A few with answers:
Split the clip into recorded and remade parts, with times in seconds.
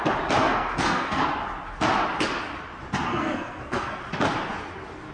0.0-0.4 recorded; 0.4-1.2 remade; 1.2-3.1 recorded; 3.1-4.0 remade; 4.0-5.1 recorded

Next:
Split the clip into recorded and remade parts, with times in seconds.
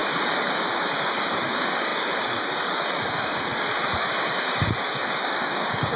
0.0-6.0 remade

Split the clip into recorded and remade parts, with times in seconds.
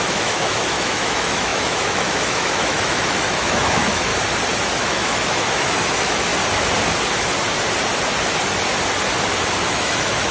0.0-4.1 remade; 4.1-4.8 recorded; 4.8-6.3 remade; 6.3-9.7 recorded; 9.7-10.3 remade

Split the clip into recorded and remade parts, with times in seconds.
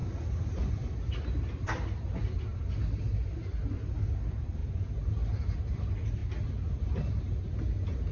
0.0-8.1 recorded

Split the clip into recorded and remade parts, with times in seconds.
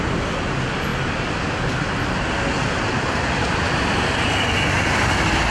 0.0-5.5 recorded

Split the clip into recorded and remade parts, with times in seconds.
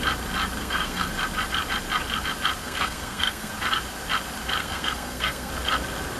0.0-0.6 recorded; 0.6-1.1 remade; 1.1-2.6 recorded; 2.6-3.5 remade; 3.5-4.6 recorded; 4.6-5.5 remade; 5.5-6.2 recorded